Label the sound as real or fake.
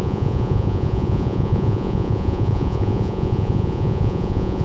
fake